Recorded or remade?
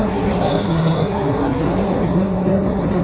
remade